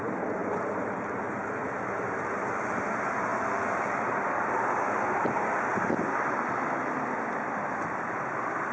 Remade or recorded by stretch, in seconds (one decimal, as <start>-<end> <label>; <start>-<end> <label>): 0.0-3.3 remade; 3.3-3.8 recorded; 3.8-8.7 remade